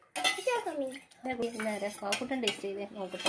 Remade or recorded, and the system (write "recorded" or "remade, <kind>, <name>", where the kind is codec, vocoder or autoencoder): recorded